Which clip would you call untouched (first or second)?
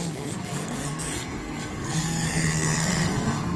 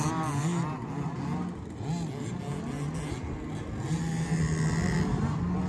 second